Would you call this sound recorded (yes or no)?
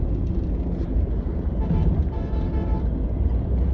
yes